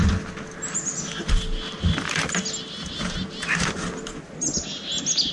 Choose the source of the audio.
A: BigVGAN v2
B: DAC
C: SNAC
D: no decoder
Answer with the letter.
D